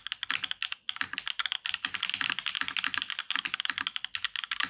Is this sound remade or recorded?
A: recorded